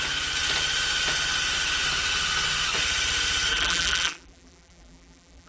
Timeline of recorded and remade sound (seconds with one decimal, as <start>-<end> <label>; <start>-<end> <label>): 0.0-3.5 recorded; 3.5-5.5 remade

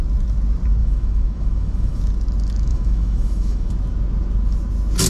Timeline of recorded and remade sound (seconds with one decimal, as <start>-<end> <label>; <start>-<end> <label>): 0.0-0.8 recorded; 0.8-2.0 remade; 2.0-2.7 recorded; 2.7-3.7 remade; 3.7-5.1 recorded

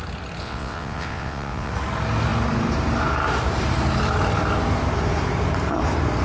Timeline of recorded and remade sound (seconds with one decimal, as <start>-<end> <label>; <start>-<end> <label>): 0.0-0.4 recorded; 0.4-1.7 remade; 1.7-6.2 recorded